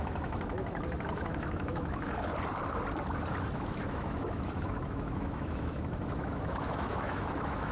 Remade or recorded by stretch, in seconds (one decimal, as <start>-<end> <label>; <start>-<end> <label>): 0.0-2.3 remade; 2.3-3.4 recorded; 3.4-7.7 remade